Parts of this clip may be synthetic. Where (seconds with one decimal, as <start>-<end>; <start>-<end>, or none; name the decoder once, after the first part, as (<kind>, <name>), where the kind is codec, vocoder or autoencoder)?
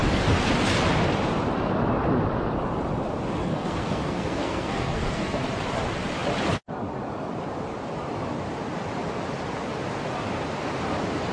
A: 3.4-5.4 (codec, SNAC)